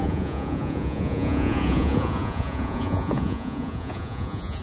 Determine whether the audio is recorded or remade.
remade